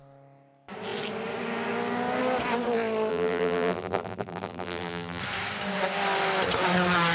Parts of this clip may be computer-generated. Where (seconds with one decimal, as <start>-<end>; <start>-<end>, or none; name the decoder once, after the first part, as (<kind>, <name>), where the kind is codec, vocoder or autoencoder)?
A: 3.1-5.2 (vocoder, BigVGAN v2)